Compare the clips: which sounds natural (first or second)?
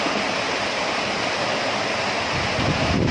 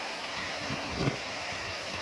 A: first